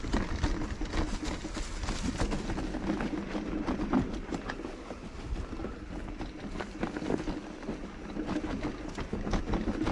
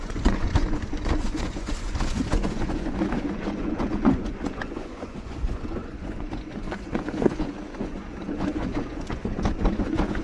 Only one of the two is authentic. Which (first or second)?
first